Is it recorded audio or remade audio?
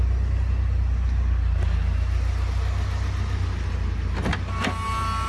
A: recorded